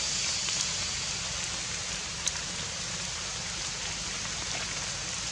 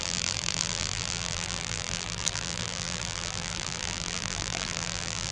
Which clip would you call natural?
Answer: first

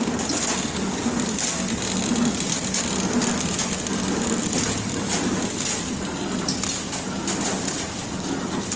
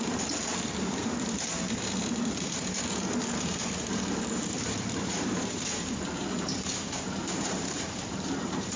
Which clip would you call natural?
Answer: first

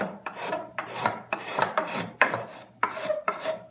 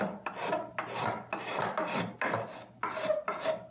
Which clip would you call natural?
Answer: second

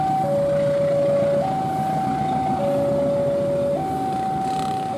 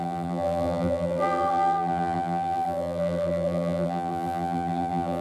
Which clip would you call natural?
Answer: first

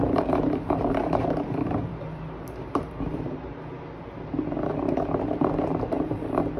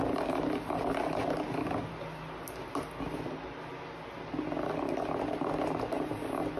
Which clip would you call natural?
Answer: second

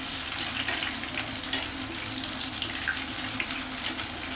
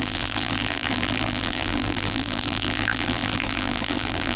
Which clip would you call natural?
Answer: first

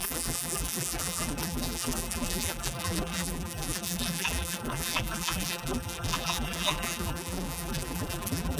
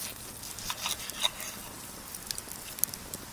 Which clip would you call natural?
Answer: second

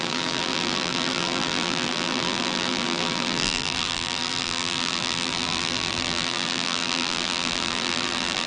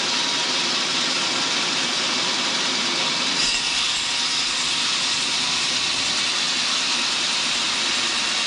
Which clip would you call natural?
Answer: second